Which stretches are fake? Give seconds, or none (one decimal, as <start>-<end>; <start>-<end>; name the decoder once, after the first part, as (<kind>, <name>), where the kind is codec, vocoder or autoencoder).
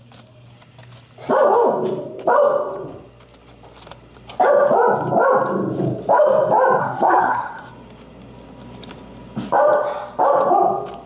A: 6.8-7.7 (codec, SNAC)